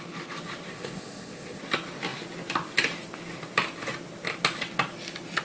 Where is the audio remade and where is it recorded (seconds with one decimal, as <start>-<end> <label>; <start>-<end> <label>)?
0.0-0.7 recorded; 0.7-1.6 remade; 1.6-5.4 recorded